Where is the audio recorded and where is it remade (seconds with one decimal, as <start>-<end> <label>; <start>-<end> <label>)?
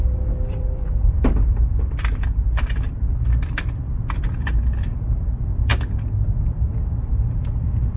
0.0-5.7 remade; 5.7-6.4 recorded; 6.4-8.0 remade